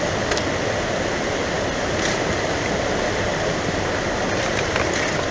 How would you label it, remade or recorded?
recorded